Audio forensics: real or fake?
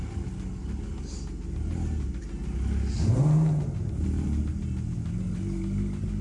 real